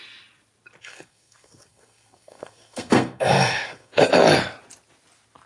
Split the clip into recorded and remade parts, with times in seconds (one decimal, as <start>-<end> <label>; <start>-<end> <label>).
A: 0.0-0.8 recorded; 0.8-4.1 remade; 4.1-5.5 recorded